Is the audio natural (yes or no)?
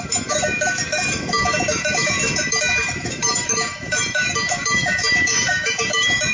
no